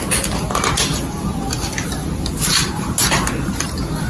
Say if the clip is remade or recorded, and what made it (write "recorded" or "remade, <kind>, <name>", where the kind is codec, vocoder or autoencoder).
recorded